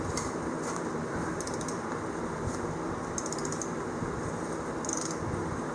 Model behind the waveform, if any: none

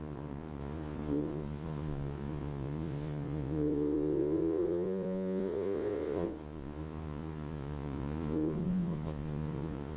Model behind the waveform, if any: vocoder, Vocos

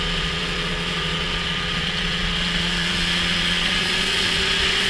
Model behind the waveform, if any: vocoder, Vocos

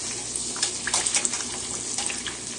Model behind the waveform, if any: none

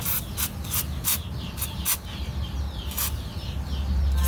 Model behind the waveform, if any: none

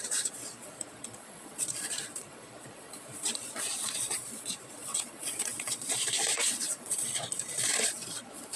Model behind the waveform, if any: vocoder, Vocos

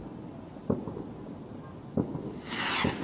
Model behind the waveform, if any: none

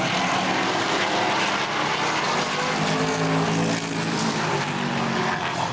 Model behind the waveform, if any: none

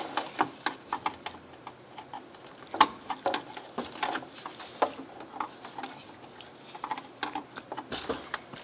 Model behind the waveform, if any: none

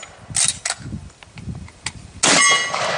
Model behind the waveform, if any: none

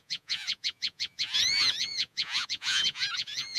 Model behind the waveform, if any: vocoder, Vocos